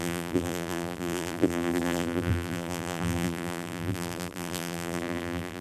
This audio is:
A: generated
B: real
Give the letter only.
A